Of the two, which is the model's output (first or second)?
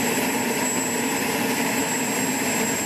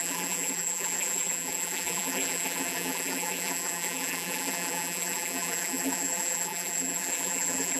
second